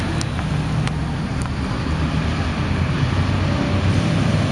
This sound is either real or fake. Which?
real